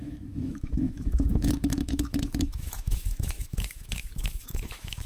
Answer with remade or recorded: remade